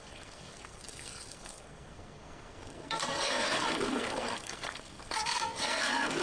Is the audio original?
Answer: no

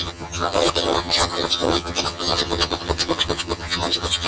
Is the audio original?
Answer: no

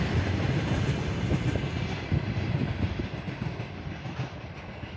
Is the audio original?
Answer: no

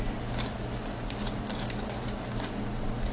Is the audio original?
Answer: yes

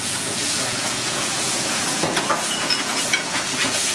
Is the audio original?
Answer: no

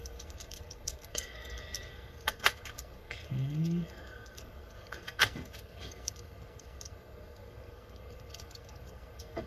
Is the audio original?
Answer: no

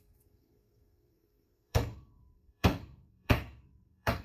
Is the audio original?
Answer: no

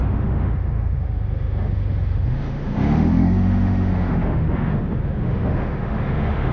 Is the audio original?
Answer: no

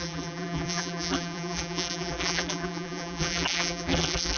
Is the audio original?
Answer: no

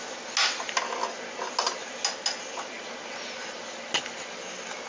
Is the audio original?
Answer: yes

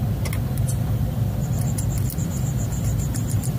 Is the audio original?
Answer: yes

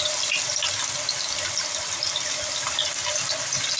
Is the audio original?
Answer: yes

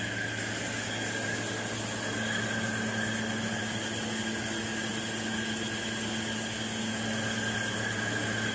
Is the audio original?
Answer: yes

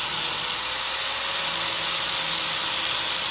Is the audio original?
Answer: yes